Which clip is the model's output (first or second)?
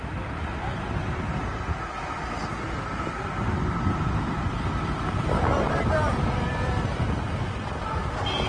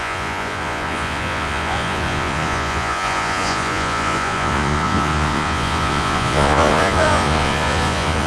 second